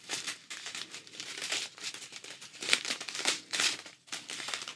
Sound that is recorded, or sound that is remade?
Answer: remade